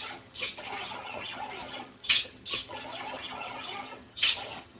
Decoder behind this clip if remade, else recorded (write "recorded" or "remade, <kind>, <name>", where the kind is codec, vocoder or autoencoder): remade, vocoder, HiFi-GAN